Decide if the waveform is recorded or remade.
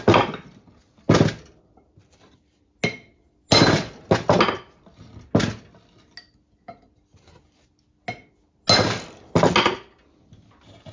recorded